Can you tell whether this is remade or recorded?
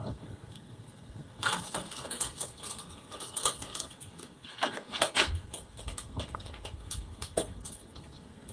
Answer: remade